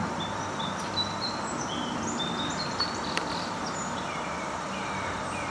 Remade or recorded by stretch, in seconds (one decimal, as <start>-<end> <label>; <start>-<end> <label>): 0.0-2.5 recorded; 2.5-5.5 remade